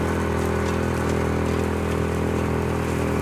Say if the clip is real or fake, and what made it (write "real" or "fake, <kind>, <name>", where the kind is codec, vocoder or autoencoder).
real